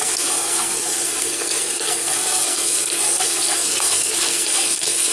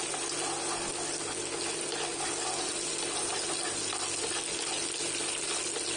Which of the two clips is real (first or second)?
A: second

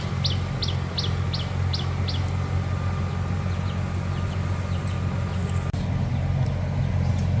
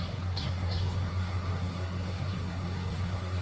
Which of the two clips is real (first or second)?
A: first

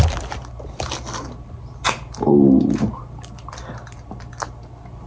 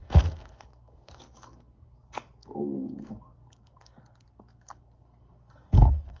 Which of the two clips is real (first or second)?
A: first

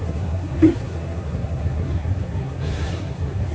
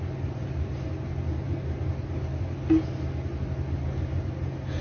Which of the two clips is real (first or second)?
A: second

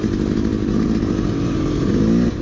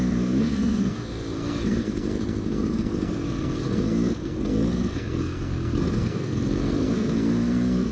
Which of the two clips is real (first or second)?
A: first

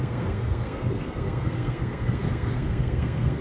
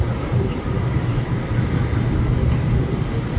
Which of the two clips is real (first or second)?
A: second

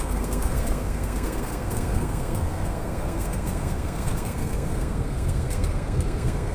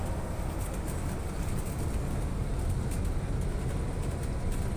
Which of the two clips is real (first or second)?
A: second